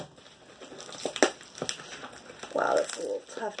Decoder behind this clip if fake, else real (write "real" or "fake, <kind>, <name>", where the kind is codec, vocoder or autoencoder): real